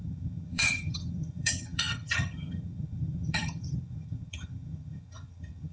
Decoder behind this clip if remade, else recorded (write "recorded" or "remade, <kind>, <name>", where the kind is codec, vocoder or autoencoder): remade, vocoder, HiFi-GAN